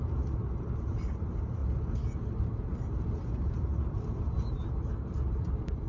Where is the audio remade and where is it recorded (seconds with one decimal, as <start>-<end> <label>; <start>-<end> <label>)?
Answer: 0.0-1.6 remade; 1.6-2.4 recorded; 2.4-3.7 remade; 3.7-4.9 recorded; 4.9-5.9 remade